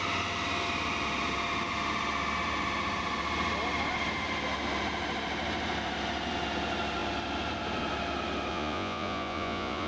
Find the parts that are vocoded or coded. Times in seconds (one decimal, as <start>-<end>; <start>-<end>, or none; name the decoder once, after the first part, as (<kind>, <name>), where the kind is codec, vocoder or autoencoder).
8.5-9.9 (vocoder, Vocos)